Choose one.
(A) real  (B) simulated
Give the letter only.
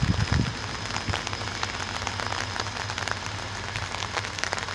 A